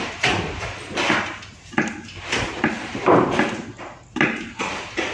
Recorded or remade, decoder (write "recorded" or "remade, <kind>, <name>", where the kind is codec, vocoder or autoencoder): recorded